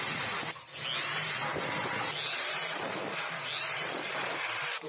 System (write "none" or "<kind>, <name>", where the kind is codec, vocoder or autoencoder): none